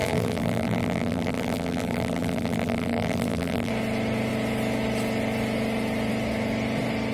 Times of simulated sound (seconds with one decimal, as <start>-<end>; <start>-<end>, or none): 0.0-3.7